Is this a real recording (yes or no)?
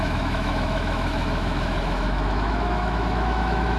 no